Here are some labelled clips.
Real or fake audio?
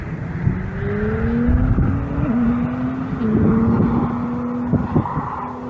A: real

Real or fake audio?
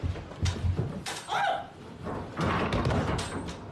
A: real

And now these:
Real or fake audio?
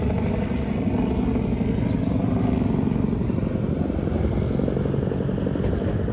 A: real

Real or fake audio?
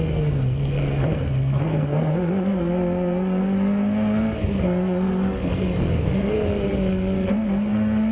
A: fake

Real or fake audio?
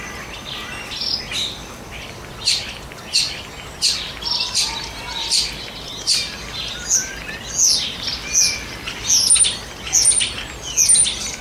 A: real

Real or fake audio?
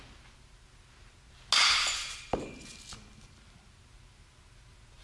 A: real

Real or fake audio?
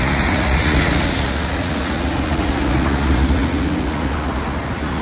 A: fake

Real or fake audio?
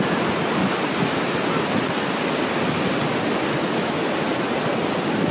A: real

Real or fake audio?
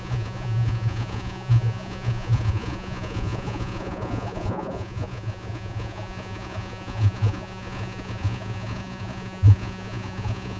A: fake